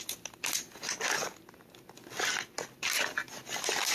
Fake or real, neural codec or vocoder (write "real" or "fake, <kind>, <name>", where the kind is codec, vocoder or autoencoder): real